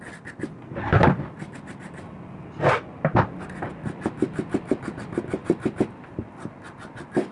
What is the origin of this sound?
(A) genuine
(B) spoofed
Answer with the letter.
A